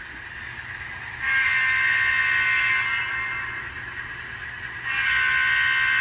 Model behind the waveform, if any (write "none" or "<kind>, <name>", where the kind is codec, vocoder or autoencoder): none